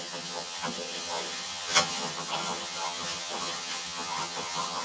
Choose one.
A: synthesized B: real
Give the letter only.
A